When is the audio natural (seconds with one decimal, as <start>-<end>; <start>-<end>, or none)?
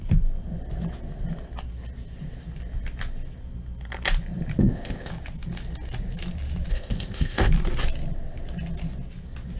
0.0-4.6; 5.1-6.7; 7.5-9.6